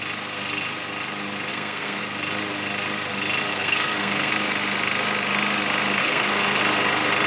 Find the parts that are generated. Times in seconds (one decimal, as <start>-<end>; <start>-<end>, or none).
1.5-2.0; 3.5-4.3; 6.0-6.6